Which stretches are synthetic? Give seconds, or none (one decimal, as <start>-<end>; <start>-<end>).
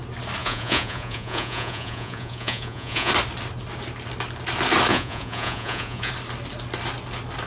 0.4-3.1; 4.9-6.1